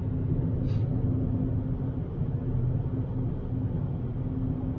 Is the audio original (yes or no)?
yes